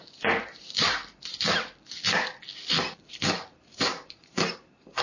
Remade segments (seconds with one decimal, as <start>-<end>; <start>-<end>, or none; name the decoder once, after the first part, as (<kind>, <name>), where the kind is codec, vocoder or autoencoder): 0.0-1.0 (vocoder, BigVGAN v2); 3.1-5.0